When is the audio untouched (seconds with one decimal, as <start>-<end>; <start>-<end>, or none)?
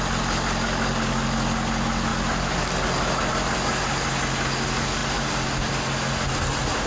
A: 0.0-6.9